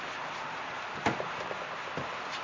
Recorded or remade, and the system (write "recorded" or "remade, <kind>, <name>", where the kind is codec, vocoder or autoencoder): recorded